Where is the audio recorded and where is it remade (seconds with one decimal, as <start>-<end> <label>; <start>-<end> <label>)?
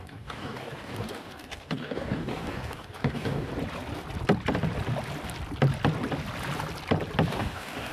0.0-3.5 remade; 3.5-7.3 recorded; 7.3-7.9 remade